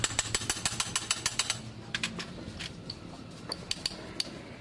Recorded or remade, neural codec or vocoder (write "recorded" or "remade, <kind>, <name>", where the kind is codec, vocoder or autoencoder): recorded